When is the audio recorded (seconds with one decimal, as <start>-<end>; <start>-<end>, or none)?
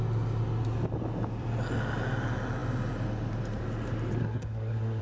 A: 0.0-4.2